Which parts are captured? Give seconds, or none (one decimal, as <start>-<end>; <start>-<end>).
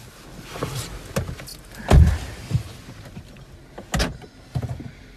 0.0-5.2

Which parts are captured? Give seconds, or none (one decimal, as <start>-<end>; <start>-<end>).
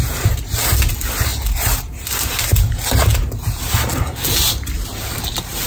0.0-5.7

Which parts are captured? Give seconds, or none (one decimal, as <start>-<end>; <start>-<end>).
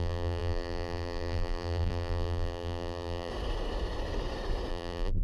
3.3-4.7